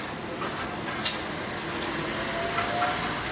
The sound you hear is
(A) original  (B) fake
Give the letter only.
A